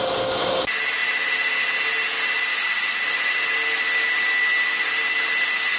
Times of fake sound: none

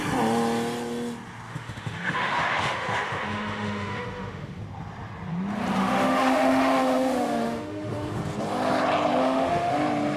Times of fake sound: 1.5-4.6 (autoencoder, DAC-VAE); 5.8-8.2; 9.2-9.7

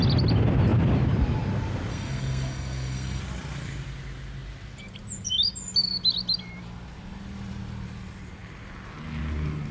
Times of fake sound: 1.9-3.2 (codec, SNAC)

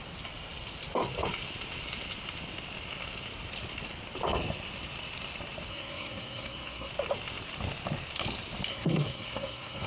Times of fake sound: 5.7-6.9 (codec, SNAC); 8.7-9.9

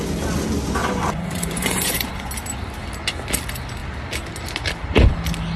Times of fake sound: 0.8-2.3 (vocoder, Vocos)

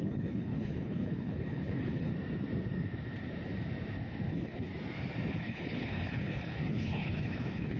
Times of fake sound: 0.0-2.1 (codec, HILCodec); 4.3-4.7; 5.3-7.8

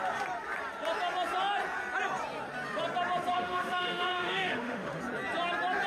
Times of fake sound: 3.3-5.0 (autoencoder, DAC-VAE)

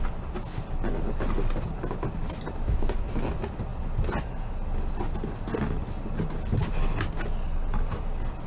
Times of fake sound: none